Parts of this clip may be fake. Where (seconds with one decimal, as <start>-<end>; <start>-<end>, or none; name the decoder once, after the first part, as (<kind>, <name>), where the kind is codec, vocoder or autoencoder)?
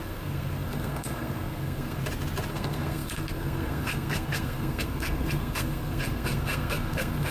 0.0-2.0 (codec, SNAC); 2.5-7.3